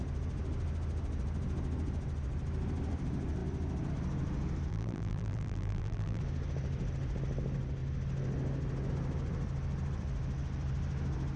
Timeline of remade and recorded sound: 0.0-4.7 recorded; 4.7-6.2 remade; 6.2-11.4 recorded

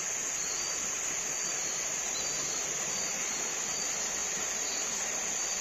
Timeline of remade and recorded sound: 0.0-5.6 recorded